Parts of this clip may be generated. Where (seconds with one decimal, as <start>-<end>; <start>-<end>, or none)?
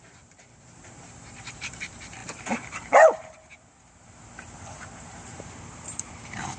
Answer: 0.0-6.6